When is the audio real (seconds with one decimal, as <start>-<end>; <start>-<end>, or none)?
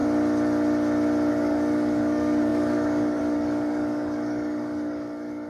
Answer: 0.0-1.3